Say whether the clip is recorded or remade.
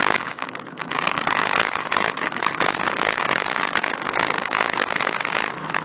remade